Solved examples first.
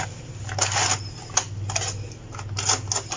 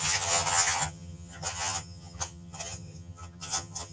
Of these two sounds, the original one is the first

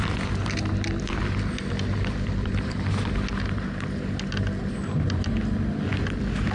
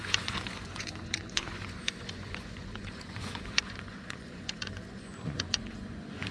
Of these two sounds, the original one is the first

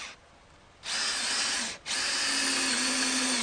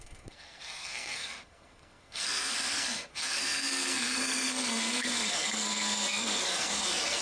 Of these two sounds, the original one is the first